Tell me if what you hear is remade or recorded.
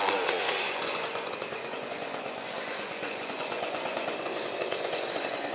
remade